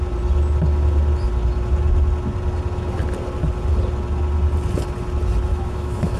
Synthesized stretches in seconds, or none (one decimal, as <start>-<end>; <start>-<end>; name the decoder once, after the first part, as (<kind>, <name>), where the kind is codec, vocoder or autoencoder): 5.5-6.2 (autoencoder, DAC-VAE)